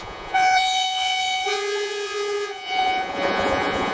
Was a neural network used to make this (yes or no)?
yes